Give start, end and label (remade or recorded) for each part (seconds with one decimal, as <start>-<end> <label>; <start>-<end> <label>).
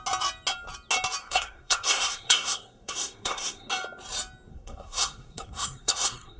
0.0-1.2 recorded; 1.2-3.7 remade; 3.7-4.5 recorded; 4.5-6.4 remade